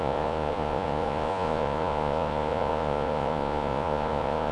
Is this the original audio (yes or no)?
no